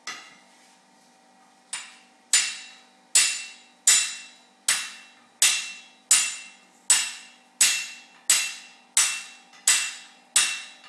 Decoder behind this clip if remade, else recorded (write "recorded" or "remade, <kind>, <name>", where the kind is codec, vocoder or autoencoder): recorded